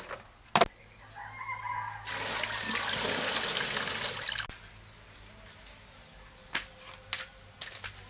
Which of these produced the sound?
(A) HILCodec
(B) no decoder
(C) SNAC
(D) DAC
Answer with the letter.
B